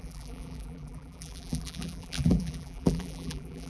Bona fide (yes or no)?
no